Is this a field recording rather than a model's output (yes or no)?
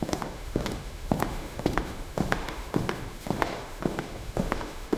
no